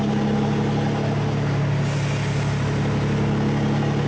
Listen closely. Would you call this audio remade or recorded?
recorded